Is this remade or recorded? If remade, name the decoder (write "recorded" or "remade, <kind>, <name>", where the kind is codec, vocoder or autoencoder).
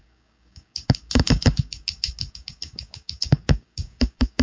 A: remade, codec, DAC